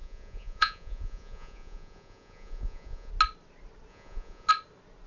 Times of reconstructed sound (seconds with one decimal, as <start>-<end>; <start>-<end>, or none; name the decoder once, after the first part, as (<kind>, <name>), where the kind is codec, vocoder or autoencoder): 0.0-3.1 (vocoder, Vocos); 3.9-4.5